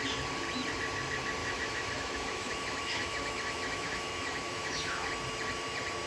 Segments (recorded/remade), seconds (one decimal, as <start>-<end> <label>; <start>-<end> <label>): 0.0-1.4 recorded; 1.4-5.1 remade; 5.1-6.1 recorded